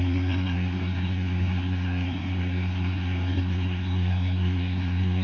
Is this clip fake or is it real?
fake